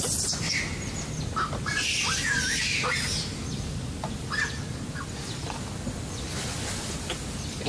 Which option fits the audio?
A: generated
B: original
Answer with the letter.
B